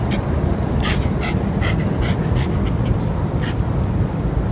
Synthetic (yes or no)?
no